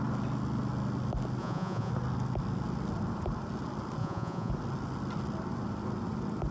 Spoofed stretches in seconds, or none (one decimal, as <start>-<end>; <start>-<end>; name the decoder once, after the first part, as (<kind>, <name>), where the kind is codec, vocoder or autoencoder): 1.4-1.9 (vocoder, Vocos); 4.0-4.5